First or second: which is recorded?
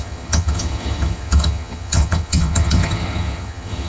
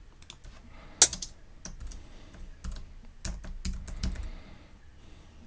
second